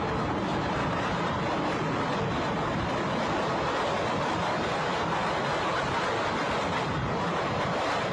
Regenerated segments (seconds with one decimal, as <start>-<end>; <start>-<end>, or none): 0.0-4.9; 6.9-8.1